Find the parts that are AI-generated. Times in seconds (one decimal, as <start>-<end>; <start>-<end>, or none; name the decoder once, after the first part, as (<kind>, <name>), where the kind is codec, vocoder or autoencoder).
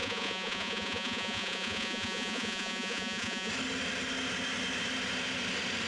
0.0-3.5 (vocoder, Vocos)